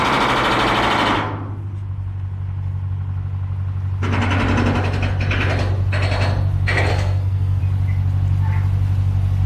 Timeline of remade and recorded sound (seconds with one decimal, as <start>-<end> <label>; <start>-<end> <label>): 0.0-6.9 recorded; 6.9-7.6 remade; 7.6-9.5 recorded